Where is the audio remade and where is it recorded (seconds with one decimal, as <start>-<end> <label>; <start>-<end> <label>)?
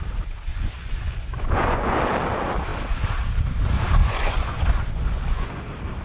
0.0-0.5 recorded; 0.5-2.0 remade; 2.0-4.0 recorded; 4.0-5.6 remade; 5.6-6.0 recorded